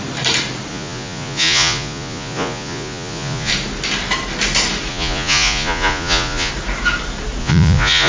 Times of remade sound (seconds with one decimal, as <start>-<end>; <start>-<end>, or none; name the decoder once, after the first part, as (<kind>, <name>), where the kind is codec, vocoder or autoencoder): 0.7-3.5 (vocoder, Vocos); 4.9-6.5; 7.4-8.1